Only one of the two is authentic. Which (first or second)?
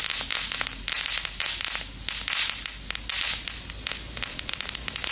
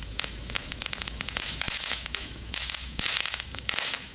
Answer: first